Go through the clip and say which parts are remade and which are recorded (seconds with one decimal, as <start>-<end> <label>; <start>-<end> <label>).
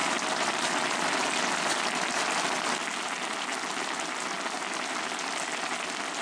0.0-6.2 recorded